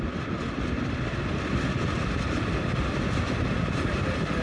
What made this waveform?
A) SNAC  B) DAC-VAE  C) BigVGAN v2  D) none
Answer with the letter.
D